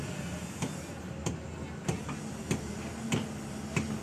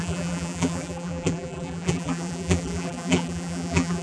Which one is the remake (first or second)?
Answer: second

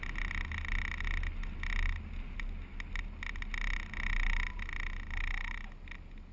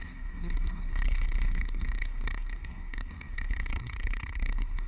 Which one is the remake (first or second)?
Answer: second